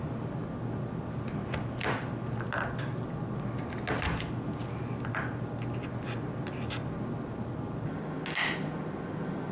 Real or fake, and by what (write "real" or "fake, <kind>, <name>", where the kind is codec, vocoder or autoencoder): real